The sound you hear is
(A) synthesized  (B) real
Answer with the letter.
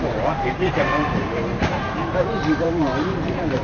A